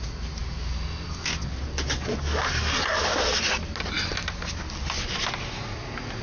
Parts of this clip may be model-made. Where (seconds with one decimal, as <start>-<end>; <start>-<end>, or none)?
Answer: none